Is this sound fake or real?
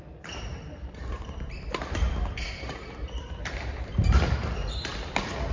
real